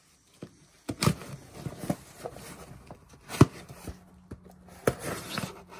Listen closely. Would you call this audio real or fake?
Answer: real